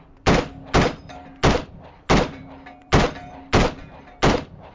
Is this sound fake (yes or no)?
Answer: yes